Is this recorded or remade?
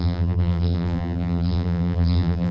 remade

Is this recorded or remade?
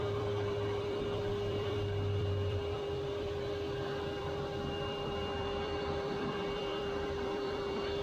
remade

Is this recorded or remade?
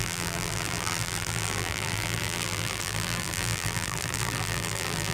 remade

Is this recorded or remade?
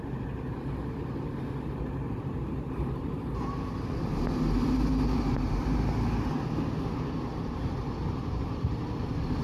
recorded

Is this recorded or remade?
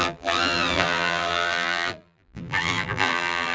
remade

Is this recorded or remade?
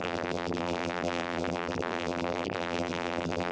remade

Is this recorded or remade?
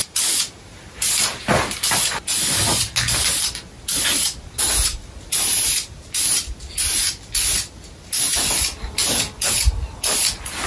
recorded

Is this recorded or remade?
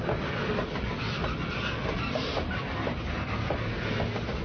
recorded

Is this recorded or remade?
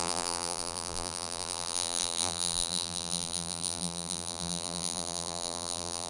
remade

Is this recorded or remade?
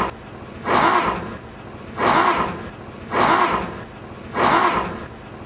recorded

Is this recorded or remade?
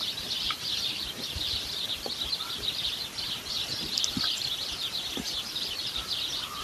remade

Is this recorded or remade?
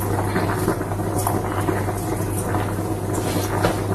recorded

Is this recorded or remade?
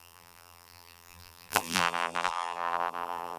remade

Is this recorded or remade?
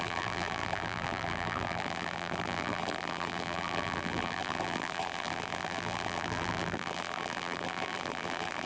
remade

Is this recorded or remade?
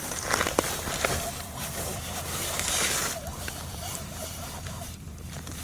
remade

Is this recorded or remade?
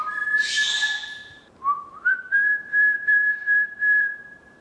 remade